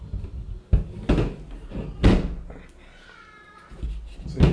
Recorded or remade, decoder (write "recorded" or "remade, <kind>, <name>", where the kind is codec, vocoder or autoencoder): recorded